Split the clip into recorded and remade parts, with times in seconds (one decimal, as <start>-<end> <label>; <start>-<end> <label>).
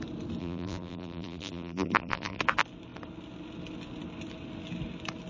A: 0.0-0.4 recorded; 0.4-2.4 remade; 2.4-5.3 recorded